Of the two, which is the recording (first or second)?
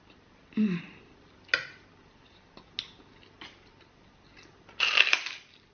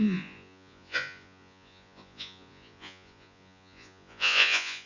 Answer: first